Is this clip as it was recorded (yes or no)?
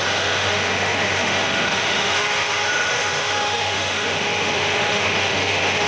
no